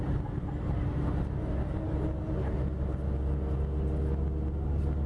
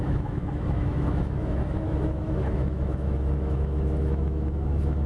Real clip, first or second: first